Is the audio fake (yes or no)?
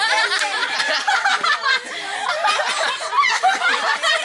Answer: no